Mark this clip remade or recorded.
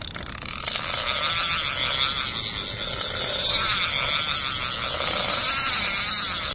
recorded